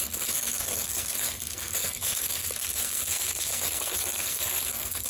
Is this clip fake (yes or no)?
yes